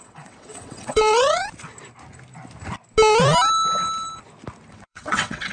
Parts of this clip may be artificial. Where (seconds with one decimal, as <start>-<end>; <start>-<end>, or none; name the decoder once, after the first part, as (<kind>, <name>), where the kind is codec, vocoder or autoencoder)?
0.0-1.4 (vocoder, WaveNeXt); 4.7-5.5